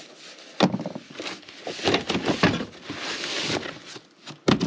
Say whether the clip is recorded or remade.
recorded